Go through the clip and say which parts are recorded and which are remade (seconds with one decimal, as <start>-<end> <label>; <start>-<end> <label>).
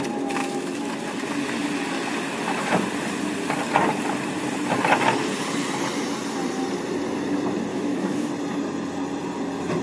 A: 0.0-0.4 recorded; 0.4-0.9 remade; 0.9-7.7 recorded; 7.7-8.3 remade; 8.3-9.8 recorded